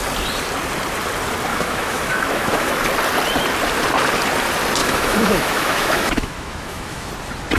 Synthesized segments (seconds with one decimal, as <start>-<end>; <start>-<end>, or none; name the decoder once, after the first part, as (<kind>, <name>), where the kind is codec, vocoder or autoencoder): 1.5-2.8 (autoencoder, DAC-VAE); 4.8-7.1